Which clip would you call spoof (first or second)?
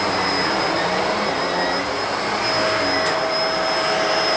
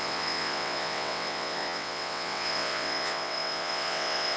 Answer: second